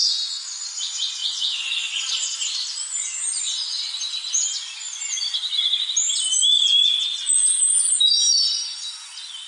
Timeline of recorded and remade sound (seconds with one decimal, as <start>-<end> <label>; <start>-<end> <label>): 0.0-0.6 remade; 0.6-1.2 recorded; 1.2-1.7 remade; 1.7-9.5 recorded